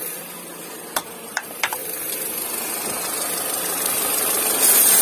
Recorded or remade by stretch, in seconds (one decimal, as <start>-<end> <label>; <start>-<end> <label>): 0.0-1.8 remade; 1.8-5.0 recorded